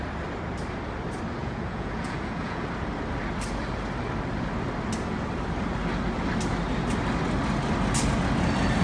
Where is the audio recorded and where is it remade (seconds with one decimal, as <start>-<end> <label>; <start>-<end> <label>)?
0.0-1.4 recorded; 1.4-2.7 remade; 2.7-8.8 recorded

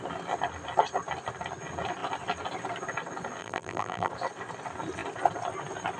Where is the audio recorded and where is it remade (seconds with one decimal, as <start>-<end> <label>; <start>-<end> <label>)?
0.0-3.4 recorded; 3.4-4.1 remade; 4.1-6.0 recorded

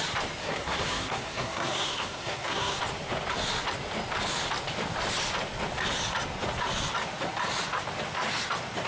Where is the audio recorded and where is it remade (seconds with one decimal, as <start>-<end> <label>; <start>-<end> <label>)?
0.0-0.4 recorded; 0.4-2.8 remade; 2.8-8.9 recorded

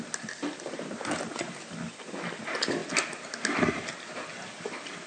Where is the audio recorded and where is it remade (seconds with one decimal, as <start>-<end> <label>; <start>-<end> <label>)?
0.0-5.1 recorded

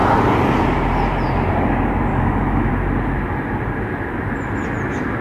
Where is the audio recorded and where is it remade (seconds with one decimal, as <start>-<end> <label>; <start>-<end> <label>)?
0.0-2.1 recorded; 2.1-2.7 remade; 2.7-5.2 recorded